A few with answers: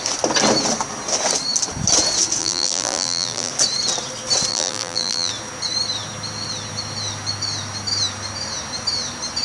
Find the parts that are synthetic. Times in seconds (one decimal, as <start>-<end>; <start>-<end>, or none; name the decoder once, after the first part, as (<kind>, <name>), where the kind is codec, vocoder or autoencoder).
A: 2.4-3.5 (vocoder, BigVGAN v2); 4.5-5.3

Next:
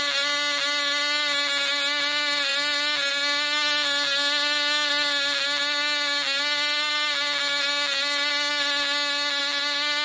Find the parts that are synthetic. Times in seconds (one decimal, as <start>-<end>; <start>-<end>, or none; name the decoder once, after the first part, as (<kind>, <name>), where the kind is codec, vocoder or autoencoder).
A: none

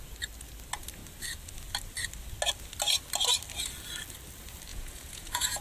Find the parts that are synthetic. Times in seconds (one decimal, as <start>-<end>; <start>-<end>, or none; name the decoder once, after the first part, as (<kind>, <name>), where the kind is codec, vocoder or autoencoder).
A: 4.7-5.6 (vocoder, Vocos)

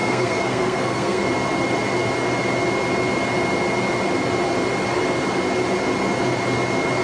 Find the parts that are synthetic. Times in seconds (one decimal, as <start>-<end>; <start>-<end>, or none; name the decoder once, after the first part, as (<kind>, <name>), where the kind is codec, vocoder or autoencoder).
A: 0.0-1.2 (codec, SNAC)